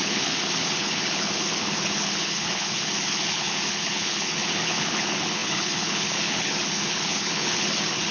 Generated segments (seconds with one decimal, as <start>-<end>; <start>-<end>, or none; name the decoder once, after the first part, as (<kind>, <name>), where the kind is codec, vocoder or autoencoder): 0.0-8.1 (codec, HILCodec)